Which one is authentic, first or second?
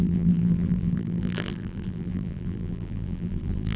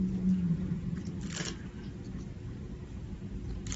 second